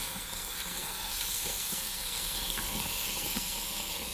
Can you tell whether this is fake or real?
fake